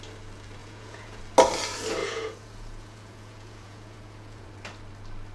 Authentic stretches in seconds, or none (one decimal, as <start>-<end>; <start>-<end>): 0.0-0.6; 1.2-2.0; 4.5-5.3